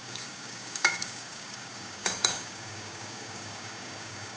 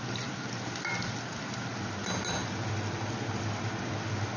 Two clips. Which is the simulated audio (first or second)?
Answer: first